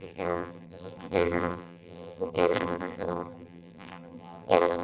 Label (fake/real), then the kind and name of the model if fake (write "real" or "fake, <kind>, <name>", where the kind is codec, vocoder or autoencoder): fake, vocoder, BigVGAN v2